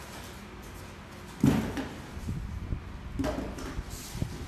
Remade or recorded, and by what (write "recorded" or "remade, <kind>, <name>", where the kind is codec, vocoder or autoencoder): recorded